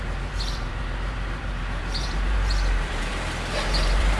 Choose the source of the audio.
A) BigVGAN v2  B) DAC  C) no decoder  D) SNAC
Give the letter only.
A